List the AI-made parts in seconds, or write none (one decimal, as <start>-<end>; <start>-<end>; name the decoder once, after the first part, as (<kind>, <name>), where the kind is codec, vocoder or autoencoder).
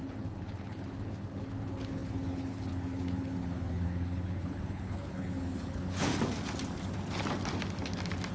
0.0-6.1 (codec, HILCodec)